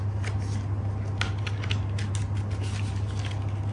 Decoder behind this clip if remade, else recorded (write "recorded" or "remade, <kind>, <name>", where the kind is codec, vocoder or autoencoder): recorded